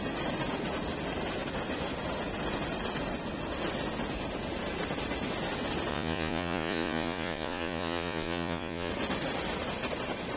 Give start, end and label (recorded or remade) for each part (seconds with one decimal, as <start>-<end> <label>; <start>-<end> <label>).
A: 0.0-5.9 recorded; 5.9-8.9 remade; 8.9-10.4 recorded